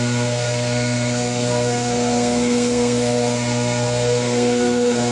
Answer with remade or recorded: remade